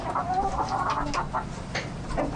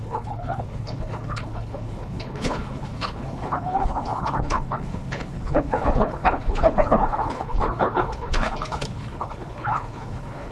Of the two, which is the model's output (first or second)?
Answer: second